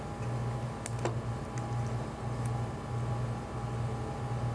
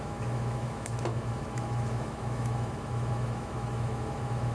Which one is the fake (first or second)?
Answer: second